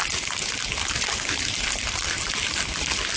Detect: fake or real real